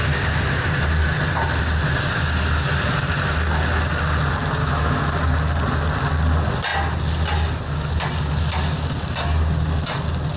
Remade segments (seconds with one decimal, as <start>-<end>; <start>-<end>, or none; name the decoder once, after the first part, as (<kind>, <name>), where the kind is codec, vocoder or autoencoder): 4.6-5.1 (autoencoder, DAC-VAE)

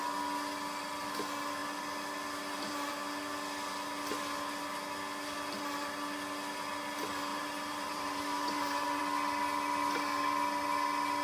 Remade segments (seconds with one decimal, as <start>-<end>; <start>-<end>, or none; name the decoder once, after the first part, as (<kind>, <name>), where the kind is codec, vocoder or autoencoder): 7.3-9.0 (vocoder, BigVGAN v2)

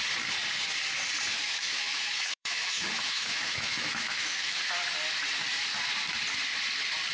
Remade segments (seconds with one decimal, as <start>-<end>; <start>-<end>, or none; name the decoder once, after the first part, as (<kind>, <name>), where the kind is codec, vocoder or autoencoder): 1.3-4.6 (autoencoder, DAC-VAE)

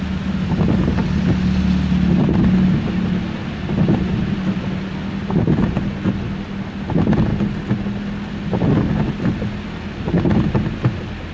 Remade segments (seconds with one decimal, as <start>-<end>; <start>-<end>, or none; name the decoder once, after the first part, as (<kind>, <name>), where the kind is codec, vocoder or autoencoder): none

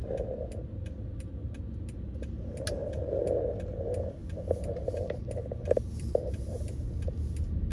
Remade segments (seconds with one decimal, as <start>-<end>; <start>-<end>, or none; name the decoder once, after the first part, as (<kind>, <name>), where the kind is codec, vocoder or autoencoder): 2.8-3.4 (vocoder, BigVGAN v2)